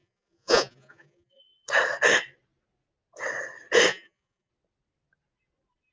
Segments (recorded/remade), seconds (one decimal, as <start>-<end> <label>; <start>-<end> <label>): 0.0-1.4 remade; 1.4-3.9 recorded; 3.9-4.5 remade; 4.5-5.9 recorded